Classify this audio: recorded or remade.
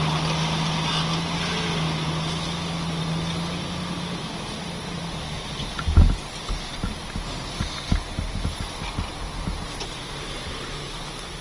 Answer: recorded